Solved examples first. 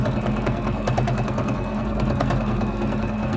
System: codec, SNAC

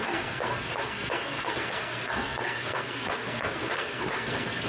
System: codec, SNAC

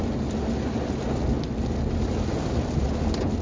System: none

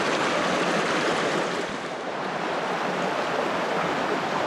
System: none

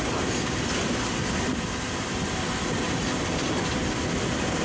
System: none